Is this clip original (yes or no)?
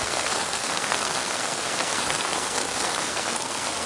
no